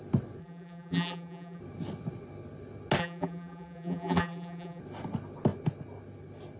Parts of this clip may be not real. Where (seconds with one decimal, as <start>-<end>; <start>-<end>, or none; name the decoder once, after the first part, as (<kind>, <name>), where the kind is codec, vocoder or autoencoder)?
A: 0.4-1.6 (vocoder, BigVGAN v2); 3.0-4.8